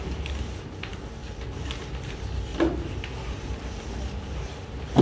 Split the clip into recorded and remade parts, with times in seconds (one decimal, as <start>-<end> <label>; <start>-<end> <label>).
0.0-0.9 remade; 0.9-1.8 recorded; 1.8-5.0 remade